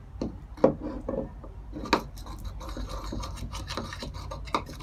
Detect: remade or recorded recorded